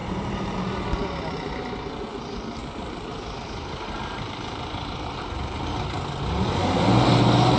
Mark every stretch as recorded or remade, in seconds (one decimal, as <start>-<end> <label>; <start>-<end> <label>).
0.0-0.6 remade; 0.6-2.6 recorded; 2.6-5.7 remade; 5.7-7.6 recorded

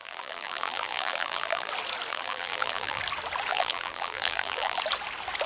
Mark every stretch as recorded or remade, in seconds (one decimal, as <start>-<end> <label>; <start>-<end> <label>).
0.0-1.7 remade; 1.7-2.1 recorded; 2.1-3.0 remade; 3.0-3.5 recorded; 3.5-4.8 remade; 4.8-5.5 recorded

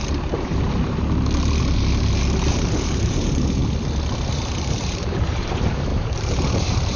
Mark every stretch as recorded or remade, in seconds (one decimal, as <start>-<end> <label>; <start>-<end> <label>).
0.0-0.5 remade; 0.5-2.5 recorded; 2.5-3.6 remade; 3.6-4.3 recorded; 4.3-7.0 remade

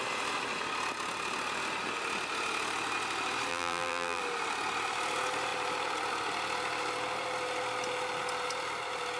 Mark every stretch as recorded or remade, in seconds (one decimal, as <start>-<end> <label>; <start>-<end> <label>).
0.0-3.5 recorded; 3.5-4.2 remade; 4.2-9.2 recorded

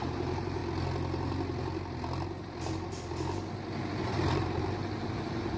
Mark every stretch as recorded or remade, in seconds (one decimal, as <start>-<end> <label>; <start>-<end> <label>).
0.0-0.6 remade; 0.6-4.0 recorded; 4.0-5.6 remade

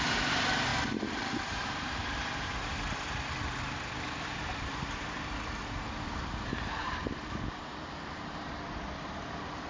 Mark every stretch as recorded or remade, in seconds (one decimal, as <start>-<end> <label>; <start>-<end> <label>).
0.0-0.7 remade; 0.7-1.5 recorded; 1.5-9.7 remade